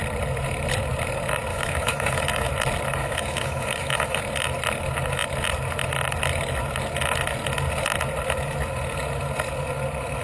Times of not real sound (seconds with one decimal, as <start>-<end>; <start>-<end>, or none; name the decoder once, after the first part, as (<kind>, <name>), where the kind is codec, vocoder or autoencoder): 1.5-2.5 (autoencoder, DAC-VAE); 3.0-4.2